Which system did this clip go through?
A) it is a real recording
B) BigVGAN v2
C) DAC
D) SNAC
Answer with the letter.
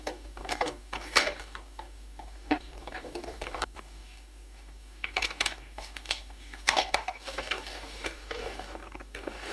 C